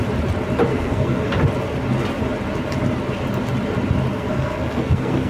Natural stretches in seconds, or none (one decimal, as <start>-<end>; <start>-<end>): 0.0-0.7; 1.4-4.1